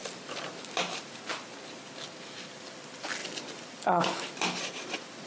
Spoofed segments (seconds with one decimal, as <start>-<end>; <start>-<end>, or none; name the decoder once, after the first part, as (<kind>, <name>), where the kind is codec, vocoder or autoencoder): 0.0-0.6 (vocoder, BigVGAN v2); 3.2-5.3